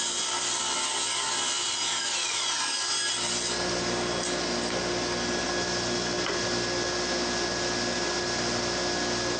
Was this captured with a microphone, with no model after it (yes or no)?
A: yes